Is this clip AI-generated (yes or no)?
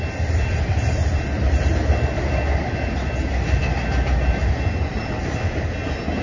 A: no